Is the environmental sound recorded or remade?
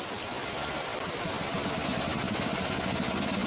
remade